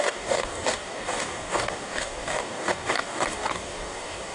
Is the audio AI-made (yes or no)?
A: yes